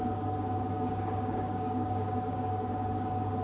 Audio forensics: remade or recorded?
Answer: remade